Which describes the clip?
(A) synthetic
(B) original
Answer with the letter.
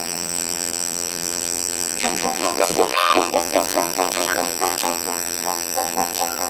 A